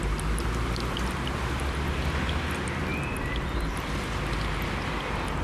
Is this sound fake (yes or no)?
no